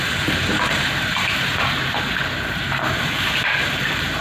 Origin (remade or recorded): remade